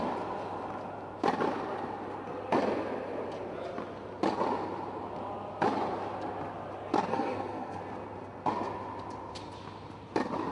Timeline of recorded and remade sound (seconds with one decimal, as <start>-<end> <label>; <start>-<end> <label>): 0.0-7.1 recorded; 7.1-7.8 remade; 7.8-10.5 recorded